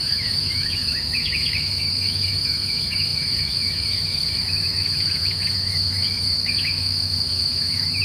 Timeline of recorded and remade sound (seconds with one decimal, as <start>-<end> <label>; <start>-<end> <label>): 0.0-8.0 remade